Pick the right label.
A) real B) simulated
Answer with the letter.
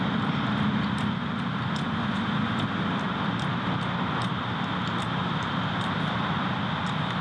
A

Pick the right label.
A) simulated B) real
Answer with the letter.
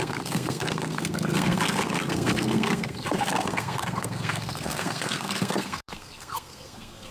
A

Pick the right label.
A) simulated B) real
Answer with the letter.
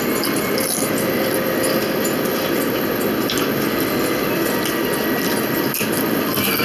B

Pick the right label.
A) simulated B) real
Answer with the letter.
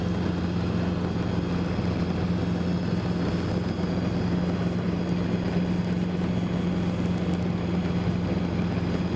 B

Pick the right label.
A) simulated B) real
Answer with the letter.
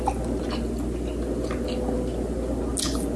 B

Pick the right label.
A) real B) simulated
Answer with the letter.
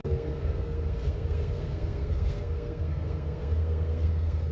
B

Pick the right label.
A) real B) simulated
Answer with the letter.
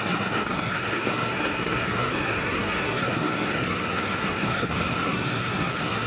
B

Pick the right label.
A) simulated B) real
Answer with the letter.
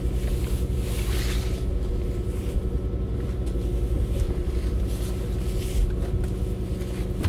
B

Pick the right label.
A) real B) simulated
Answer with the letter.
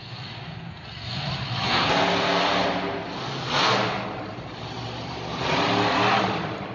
A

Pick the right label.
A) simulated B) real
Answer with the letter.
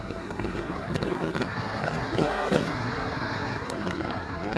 A